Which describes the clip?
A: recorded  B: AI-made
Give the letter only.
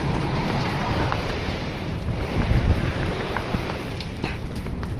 B